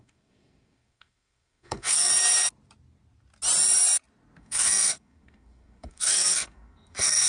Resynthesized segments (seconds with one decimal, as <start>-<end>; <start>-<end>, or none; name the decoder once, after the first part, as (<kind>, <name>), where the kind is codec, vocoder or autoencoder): 0.0-2.1 (codec, SNAC); 4.4-7.3